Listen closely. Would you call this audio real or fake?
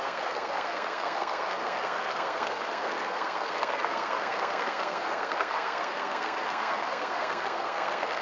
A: fake